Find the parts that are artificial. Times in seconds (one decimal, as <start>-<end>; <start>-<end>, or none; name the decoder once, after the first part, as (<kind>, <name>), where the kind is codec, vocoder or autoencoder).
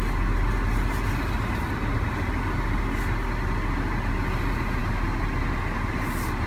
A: none